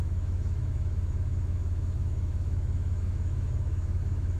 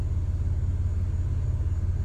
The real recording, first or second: second